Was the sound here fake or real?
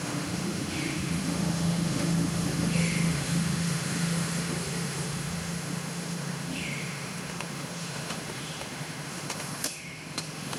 fake